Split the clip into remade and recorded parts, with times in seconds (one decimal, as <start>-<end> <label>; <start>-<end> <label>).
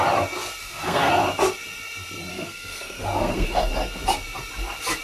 0.0-0.6 recorded; 0.6-1.1 remade; 1.1-2.3 recorded; 2.3-3.7 remade; 3.7-5.0 recorded